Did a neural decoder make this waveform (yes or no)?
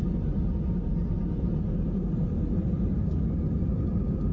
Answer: no